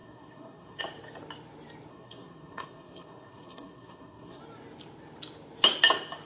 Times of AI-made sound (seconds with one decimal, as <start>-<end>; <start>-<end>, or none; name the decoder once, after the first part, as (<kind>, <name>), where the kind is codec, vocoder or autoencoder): 0.0-0.8 (codec, SNAC); 1.9-4.4